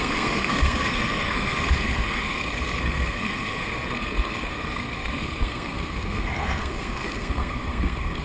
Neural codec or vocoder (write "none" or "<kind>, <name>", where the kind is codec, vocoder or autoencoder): codec, SNAC